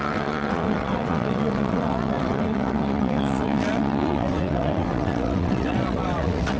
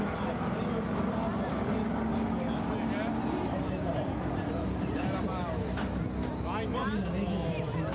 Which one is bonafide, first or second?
second